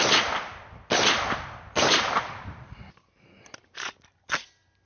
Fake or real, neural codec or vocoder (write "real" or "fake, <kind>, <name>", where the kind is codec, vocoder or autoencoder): real